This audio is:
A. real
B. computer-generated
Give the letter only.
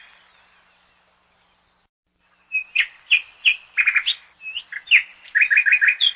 A